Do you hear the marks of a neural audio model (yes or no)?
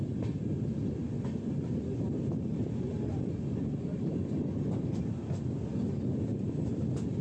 no